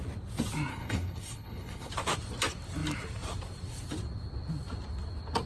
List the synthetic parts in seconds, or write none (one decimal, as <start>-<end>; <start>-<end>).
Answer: 0.7-1.9